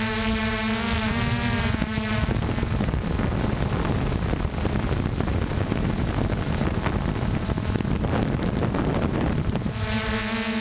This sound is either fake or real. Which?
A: real